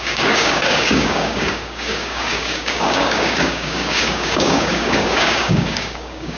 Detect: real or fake fake